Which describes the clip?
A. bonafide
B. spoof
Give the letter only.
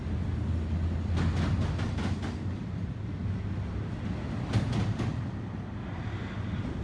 A